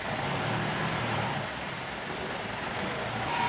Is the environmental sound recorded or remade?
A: remade